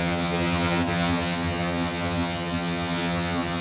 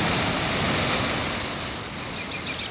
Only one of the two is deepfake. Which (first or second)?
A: first